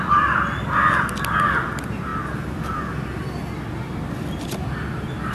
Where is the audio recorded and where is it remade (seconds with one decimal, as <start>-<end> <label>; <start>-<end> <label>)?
0.0-5.3 recorded